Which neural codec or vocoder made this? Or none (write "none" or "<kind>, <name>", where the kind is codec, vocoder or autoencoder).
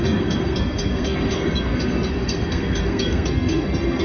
codec, SNAC